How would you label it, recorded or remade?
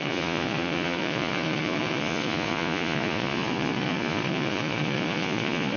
remade